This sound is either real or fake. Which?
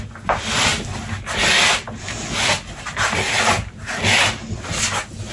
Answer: real